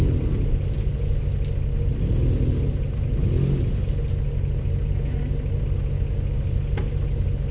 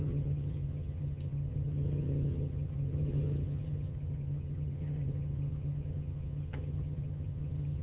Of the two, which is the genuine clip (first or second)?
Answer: first